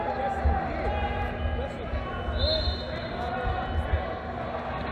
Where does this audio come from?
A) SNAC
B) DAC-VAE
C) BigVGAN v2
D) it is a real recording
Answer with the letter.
D